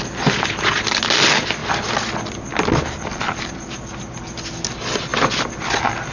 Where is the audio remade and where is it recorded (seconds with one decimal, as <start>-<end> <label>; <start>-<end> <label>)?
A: 0.0-6.1 recorded